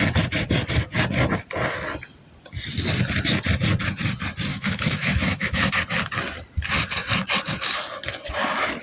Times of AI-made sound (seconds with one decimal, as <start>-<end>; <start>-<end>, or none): 4.5-5.7